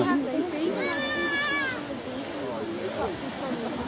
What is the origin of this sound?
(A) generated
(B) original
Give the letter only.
B